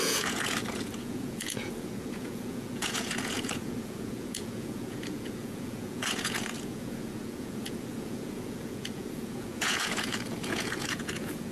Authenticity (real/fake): fake